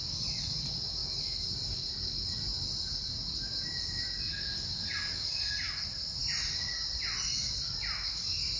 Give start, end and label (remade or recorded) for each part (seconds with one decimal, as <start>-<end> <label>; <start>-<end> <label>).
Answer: 0.0-1.0 remade; 1.0-1.7 recorded; 1.7-2.5 remade; 2.5-5.1 recorded; 5.1-8.6 remade